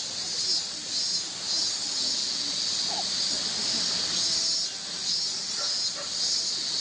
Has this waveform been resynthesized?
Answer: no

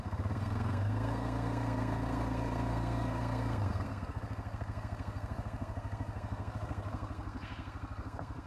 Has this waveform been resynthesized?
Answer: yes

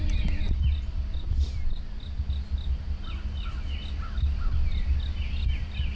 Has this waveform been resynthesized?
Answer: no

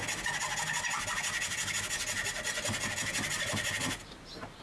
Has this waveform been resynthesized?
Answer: no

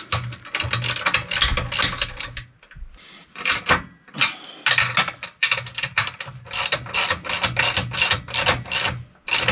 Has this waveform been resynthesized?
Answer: no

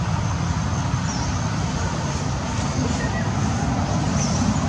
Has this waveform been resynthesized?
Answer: no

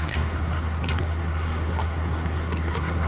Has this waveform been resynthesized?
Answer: yes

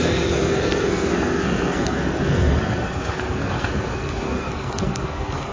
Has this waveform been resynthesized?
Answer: yes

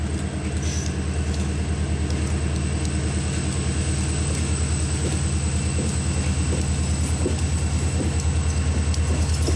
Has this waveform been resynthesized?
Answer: no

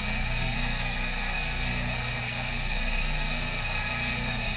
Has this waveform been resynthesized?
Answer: yes